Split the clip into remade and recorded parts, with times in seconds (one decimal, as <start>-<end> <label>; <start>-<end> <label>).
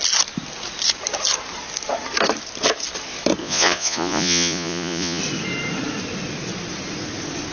0.0-3.4 recorded; 3.4-5.2 remade; 5.2-7.5 recorded